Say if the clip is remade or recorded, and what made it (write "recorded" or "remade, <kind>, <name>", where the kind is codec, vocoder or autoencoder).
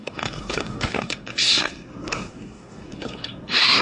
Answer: remade, codec, SNAC